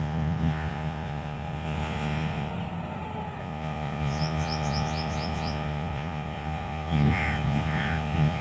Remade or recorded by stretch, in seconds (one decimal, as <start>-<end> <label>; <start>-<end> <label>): 0.0-2.5 remade; 2.5-3.4 recorded; 3.4-8.4 remade